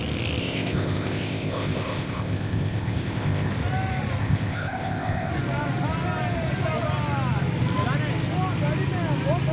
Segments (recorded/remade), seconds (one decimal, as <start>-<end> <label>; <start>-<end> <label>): 0.0-0.4 recorded; 0.4-3.5 remade; 3.5-4.2 recorded; 4.2-5.3 remade; 5.3-9.5 recorded